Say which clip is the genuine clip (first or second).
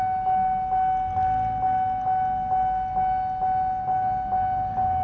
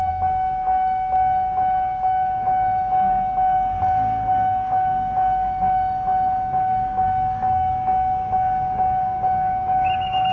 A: first